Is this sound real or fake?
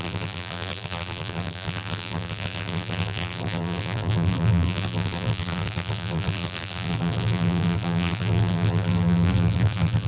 fake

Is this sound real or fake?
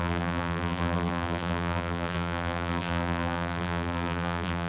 fake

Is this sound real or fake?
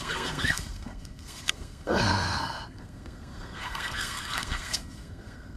fake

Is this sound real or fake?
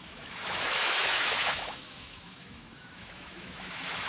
fake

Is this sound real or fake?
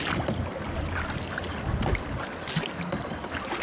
real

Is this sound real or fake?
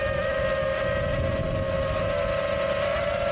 real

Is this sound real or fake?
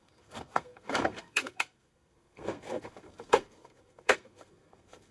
fake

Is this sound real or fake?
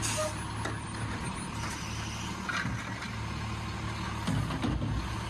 real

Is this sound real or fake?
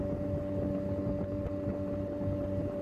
real